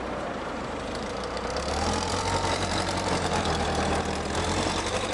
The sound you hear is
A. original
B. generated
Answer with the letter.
B